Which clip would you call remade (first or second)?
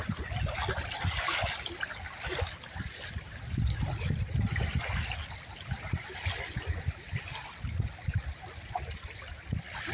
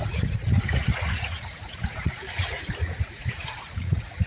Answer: second